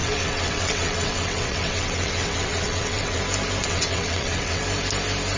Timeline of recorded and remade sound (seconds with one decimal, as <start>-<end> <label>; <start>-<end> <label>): 0.0-3.2 remade; 3.2-3.6 recorded; 3.6-4.6 remade; 4.6-5.4 recorded